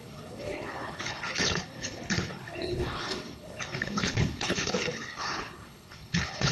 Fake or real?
fake